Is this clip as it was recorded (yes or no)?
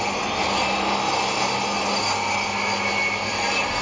yes